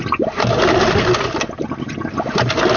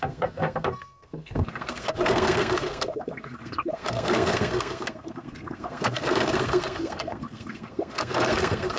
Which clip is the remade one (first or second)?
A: second